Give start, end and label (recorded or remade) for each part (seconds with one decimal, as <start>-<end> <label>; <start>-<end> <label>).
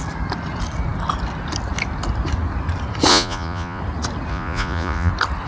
0.0-3.1 recorded; 3.1-3.8 remade; 3.8-4.3 recorded; 4.3-5.1 remade; 5.1-5.5 recorded